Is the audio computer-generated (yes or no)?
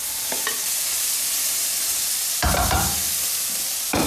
yes